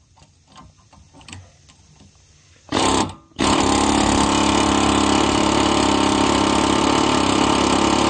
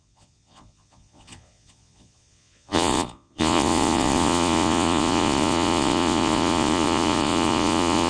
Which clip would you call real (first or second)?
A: first